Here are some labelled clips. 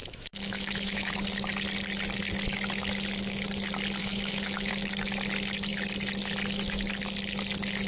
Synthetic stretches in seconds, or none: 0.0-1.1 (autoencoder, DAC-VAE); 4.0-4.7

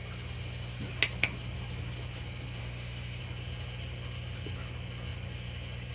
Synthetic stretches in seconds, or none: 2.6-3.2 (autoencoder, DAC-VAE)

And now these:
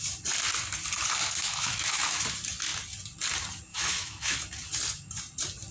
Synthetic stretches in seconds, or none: 1.5-2.2 (autoencoder, DAC-VAE); 3.7-4.4

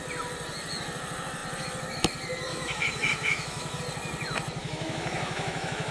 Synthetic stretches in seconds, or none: 2.5-3.8 (autoencoder, DAC-VAE); 4.6-5.9

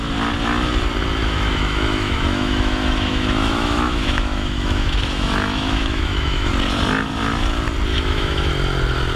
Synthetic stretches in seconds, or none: 1.2-6.5 (autoencoder, DAC-VAE); 7.9-8.5

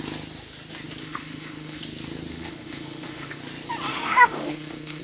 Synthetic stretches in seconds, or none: 1.0-1.8 (autoencoder, DAC-VAE); 2.3-3.4; 3.9-5.0

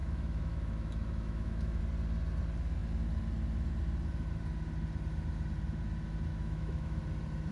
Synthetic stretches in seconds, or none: 0.0-1.8 (autoencoder, DAC-VAE); 6.3-7.0

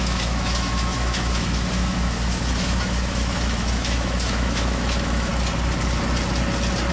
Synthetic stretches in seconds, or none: 0.0-5.3 (autoencoder, DAC-VAE)